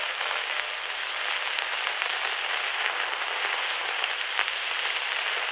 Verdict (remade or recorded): recorded